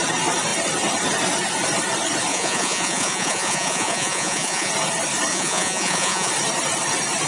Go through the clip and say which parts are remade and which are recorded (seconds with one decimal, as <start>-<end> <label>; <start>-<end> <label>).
0.0-2.3 recorded; 2.3-4.7 remade; 4.7-5.3 recorded; 5.3-6.3 remade; 6.3-7.3 recorded